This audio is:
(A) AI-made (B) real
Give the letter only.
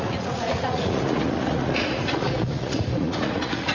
A